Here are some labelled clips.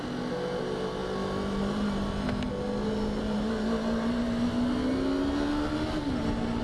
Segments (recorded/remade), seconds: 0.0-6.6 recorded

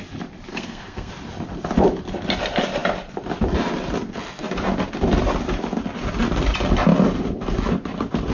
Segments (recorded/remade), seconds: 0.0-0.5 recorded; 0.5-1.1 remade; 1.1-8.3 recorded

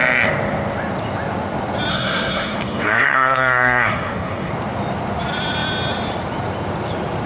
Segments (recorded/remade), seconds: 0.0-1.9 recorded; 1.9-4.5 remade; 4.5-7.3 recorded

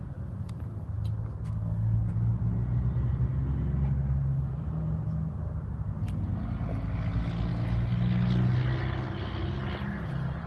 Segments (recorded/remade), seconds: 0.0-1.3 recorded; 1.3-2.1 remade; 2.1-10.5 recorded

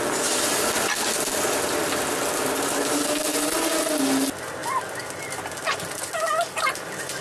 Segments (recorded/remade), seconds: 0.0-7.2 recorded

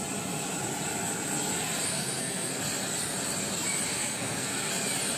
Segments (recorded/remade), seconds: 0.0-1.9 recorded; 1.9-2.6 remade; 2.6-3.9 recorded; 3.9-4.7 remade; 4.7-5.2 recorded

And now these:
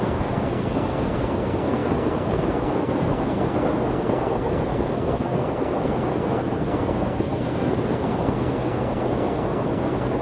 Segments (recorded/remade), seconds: 0.0-10.2 remade

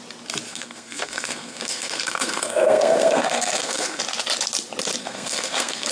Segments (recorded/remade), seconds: 0.0-0.5 recorded; 0.5-4.0 remade; 4.0-5.0 recorded; 5.0-5.9 remade